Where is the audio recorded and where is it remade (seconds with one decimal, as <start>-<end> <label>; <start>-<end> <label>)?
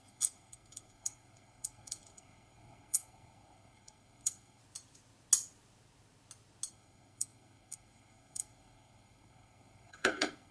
0.0-4.6 remade; 4.6-6.7 recorded; 6.7-10.5 remade